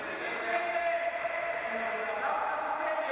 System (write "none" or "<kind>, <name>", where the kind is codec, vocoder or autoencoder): none